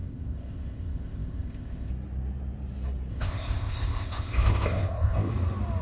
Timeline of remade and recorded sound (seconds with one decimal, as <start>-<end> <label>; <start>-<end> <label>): 0.0-1.9 remade; 1.9-3.1 recorded; 3.1-5.3 remade; 5.3-5.8 recorded